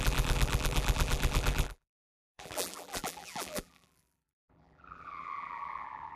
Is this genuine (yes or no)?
no